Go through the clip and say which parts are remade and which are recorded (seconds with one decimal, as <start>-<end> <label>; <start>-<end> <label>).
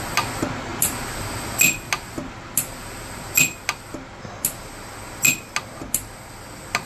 0.0-6.9 recorded